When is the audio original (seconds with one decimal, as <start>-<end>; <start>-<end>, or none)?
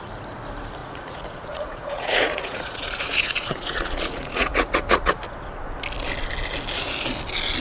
0.0-0.8; 5.2-7.6